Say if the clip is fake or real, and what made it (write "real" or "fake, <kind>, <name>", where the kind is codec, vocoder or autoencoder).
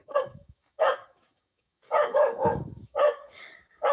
fake, codec, DAC